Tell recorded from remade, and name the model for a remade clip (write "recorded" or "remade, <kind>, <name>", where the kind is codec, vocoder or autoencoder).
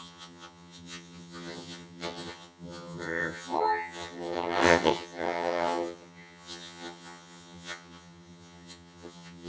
remade, vocoder, HiFi-GAN